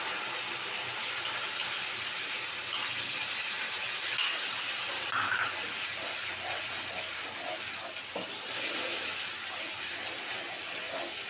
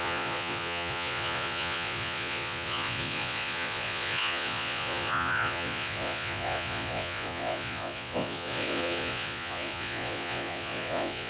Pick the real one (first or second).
first